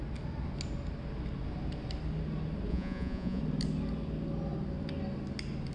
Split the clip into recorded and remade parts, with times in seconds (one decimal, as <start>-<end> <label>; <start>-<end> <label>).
0.0-2.7 recorded; 2.7-3.4 remade; 3.4-5.7 recorded